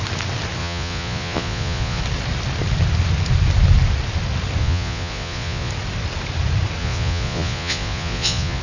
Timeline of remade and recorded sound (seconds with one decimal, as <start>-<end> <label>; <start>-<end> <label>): 0.0-0.6 recorded; 0.6-2.0 remade; 2.0-4.6 recorded; 4.6-5.7 remade; 5.7-6.8 recorded; 6.8-8.6 remade